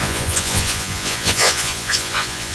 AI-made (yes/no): yes